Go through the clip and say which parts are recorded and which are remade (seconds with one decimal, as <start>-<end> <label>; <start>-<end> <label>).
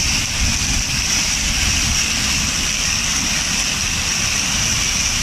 0.0-5.2 recorded